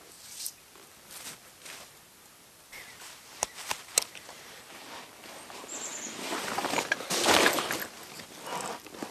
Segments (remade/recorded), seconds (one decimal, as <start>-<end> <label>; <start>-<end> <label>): 0.0-2.7 recorded; 2.7-4.9 remade; 4.9-9.1 recorded